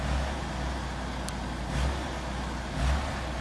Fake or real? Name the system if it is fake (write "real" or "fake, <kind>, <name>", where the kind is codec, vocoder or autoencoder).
real